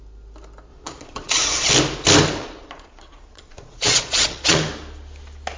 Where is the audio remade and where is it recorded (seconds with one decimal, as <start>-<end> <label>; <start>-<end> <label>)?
0.0-0.7 recorded; 0.7-1.7 remade; 1.7-2.4 recorded; 2.4-4.6 remade; 4.6-5.6 recorded